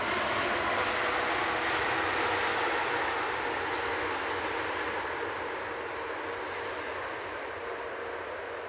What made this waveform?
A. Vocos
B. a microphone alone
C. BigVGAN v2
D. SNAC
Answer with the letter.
B